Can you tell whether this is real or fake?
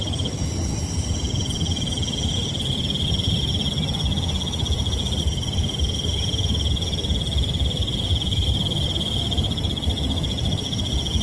real